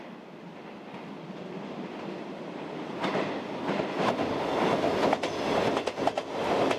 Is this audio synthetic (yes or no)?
no